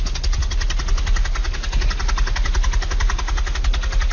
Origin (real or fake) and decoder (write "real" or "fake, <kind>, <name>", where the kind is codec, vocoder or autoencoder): real